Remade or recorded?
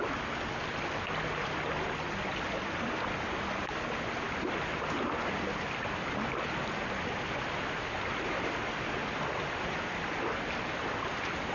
recorded